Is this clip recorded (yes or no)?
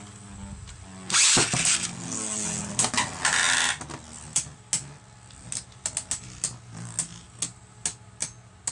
yes